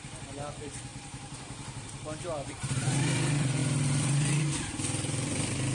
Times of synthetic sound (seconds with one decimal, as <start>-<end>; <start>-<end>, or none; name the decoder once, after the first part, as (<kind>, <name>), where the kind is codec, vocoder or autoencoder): 0.0-5.7 (vocoder, BigVGAN v2)